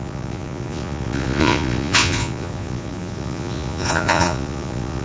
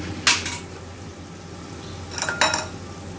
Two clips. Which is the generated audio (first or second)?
first